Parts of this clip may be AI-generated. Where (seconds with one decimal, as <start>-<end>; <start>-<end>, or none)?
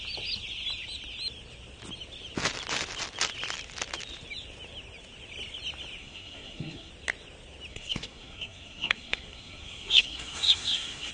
6.0-6.9; 7.7-11.1